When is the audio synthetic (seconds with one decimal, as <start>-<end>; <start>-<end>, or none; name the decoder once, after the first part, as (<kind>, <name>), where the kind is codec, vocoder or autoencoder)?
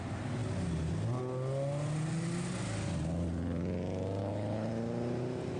4.2-4.7 (codec, HILCodec)